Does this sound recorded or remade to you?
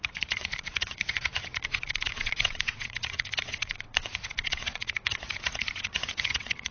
remade